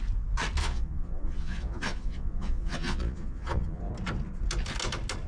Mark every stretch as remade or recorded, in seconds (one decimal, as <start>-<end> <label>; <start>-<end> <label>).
0.0-0.6 recorded; 0.6-3.8 remade; 3.8-5.3 recorded